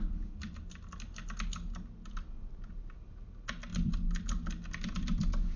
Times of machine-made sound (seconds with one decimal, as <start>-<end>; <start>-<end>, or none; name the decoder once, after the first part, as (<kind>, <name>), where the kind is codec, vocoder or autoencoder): none

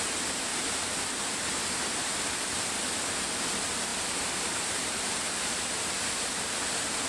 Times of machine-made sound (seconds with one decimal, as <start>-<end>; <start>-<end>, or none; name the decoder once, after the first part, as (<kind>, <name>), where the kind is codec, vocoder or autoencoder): 3.9-5.7 (vocoder, BigVGAN v2)

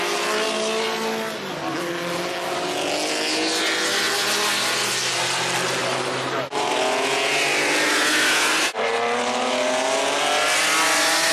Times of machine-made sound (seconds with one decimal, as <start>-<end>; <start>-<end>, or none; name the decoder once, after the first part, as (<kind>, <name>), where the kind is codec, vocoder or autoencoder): 5.8-6.7 (vocoder, BigVGAN v2)

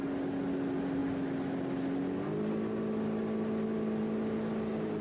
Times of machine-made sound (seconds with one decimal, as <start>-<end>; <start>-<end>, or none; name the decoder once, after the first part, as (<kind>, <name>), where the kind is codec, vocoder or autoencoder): none